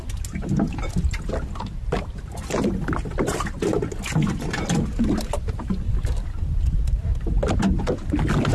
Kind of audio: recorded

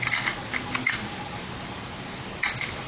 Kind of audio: recorded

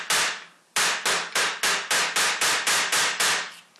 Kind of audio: recorded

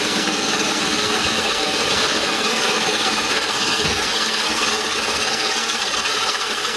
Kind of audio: remade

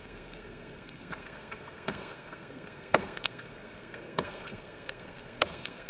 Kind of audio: remade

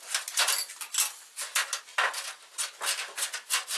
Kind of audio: recorded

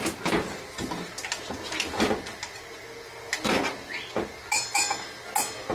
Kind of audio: recorded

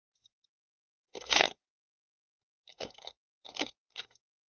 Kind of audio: remade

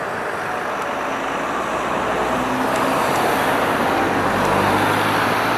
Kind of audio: recorded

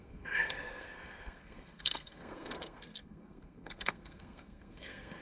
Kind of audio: remade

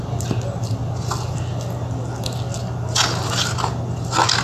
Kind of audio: recorded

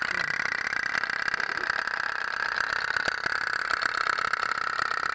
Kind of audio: recorded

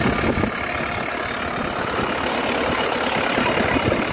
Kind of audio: recorded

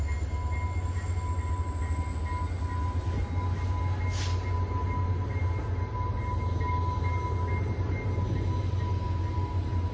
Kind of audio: recorded